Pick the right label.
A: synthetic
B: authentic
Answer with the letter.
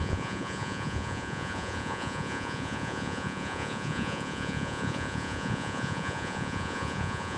A